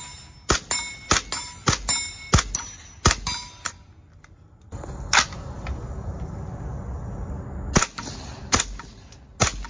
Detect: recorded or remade recorded